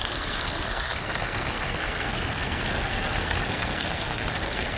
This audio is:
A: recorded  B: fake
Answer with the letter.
B